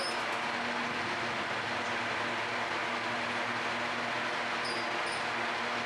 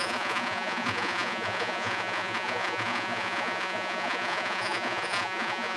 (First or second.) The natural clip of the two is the first